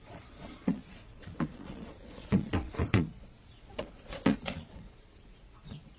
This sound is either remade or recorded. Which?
remade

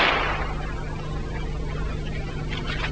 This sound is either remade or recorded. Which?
recorded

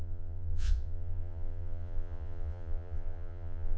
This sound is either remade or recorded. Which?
remade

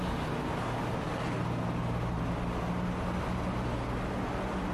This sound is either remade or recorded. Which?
recorded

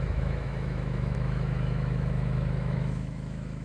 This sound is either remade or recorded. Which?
remade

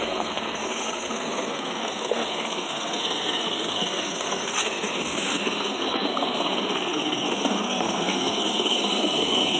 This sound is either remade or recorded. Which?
remade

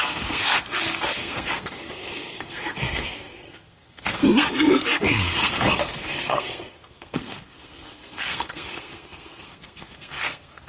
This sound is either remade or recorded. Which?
remade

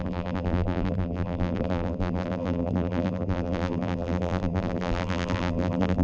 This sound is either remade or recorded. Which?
remade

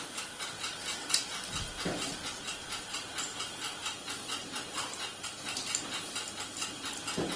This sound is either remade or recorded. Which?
recorded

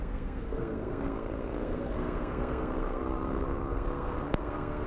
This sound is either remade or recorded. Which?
remade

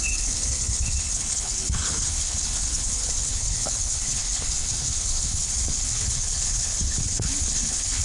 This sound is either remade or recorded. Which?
remade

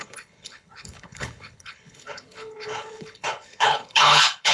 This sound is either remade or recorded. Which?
remade